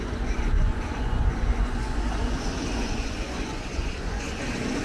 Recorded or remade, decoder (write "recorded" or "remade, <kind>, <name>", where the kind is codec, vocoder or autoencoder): remade, vocoder, Vocos